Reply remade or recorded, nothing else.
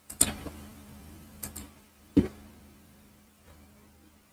remade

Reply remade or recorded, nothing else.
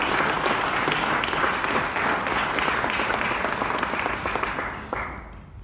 recorded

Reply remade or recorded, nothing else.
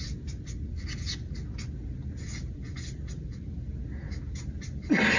recorded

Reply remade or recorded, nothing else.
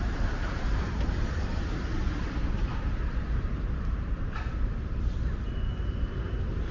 remade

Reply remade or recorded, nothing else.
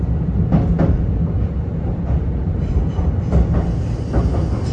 recorded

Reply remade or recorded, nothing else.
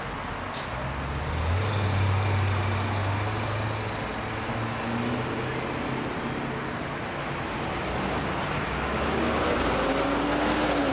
recorded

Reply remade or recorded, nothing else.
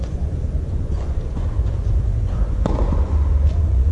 remade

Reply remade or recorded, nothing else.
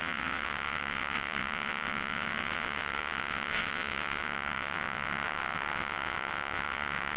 remade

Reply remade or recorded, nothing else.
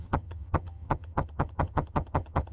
remade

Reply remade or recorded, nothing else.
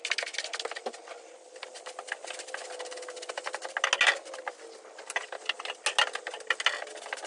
recorded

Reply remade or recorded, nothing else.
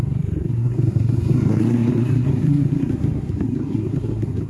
remade